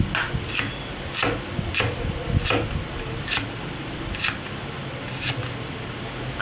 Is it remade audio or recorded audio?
recorded